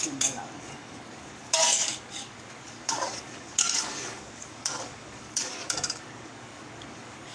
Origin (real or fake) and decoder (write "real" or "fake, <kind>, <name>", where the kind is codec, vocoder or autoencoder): fake, codec, DAC